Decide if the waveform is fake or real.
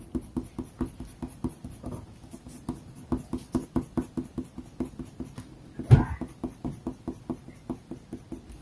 real